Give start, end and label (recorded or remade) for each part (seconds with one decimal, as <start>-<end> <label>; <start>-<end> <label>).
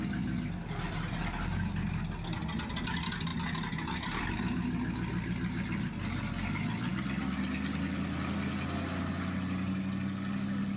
0.0-10.8 recorded